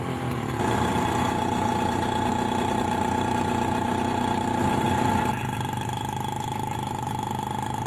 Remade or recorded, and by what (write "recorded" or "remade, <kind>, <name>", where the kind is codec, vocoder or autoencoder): recorded